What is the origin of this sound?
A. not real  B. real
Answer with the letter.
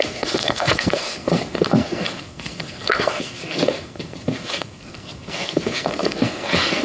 A